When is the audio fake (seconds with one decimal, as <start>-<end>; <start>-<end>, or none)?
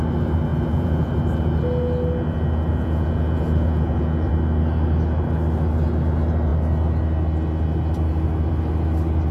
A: 0.5-1.1; 2.7-4.3